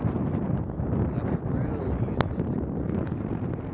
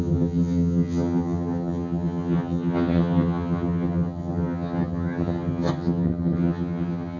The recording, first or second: first